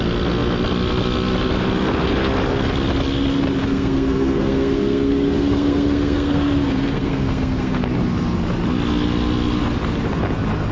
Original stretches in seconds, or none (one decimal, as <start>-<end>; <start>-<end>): 0.0-3.6; 7.8-10.7